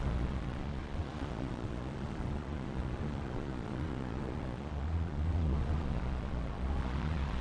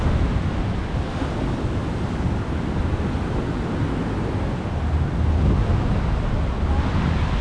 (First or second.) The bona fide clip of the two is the second